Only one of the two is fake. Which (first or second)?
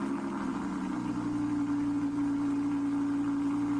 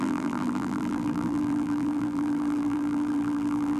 second